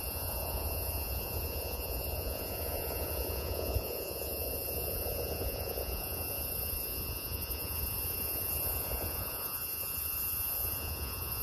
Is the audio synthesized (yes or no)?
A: yes